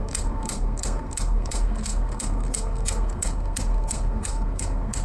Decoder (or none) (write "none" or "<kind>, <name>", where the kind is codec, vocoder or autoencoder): codec, SNAC